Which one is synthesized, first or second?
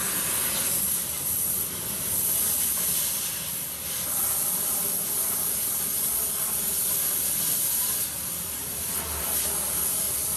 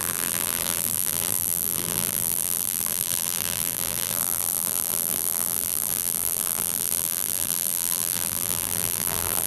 second